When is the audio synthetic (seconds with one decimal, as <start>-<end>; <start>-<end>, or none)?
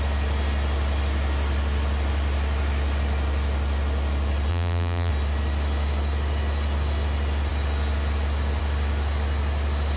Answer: 4.5-5.1